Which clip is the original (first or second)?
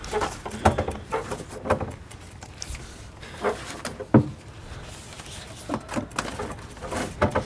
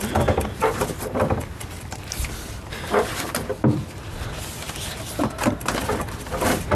first